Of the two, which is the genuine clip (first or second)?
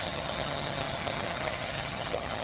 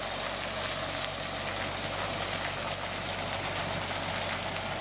second